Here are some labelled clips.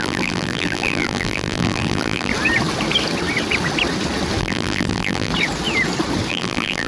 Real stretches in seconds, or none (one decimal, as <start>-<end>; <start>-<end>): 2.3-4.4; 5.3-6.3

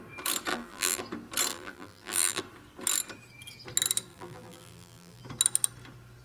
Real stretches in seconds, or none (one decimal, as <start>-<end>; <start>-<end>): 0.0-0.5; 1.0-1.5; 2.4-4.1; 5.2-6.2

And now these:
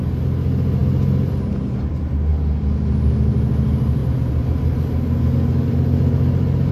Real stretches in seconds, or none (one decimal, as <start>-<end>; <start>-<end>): 0.0-6.7

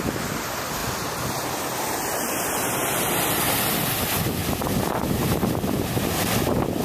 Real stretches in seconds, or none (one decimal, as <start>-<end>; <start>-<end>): 0.0-4.4; 6.2-6.8

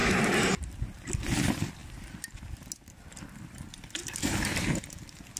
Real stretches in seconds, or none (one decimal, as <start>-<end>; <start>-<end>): 1.1-5.4

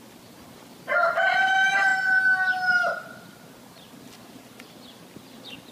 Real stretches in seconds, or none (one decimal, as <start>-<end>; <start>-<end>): 0.0-5.7

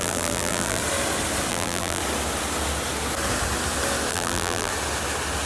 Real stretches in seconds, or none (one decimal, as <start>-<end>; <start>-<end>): 0.8-1.5; 2.0-4.1; 4.7-5.5